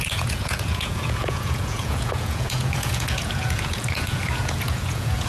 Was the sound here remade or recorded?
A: remade